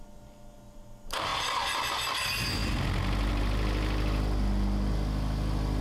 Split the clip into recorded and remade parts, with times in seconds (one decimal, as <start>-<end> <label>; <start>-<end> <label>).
0.0-5.8 recorded